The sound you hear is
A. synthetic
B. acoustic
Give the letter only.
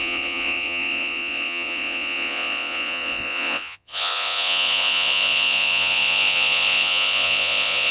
A